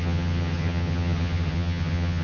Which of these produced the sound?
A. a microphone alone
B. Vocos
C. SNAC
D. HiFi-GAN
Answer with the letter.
D